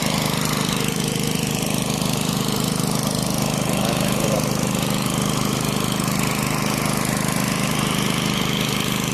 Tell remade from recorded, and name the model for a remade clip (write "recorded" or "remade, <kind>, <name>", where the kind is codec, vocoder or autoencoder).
recorded